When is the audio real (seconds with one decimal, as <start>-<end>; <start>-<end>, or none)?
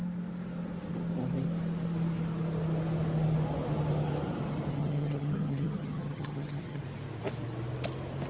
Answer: 0.0-4.8; 6.8-8.3